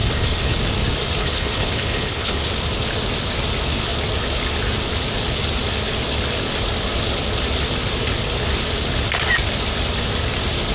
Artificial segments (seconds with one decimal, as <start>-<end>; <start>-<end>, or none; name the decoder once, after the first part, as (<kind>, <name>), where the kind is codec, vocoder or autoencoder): 0.0-0.6 (codec, HILCodec); 1.2-2.5